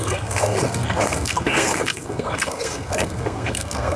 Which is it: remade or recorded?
remade